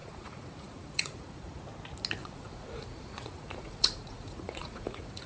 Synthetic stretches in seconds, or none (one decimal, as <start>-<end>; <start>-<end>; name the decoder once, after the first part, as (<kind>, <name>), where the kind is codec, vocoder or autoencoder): 0.0-1.6 (vocoder, Vocos); 2.2-5.3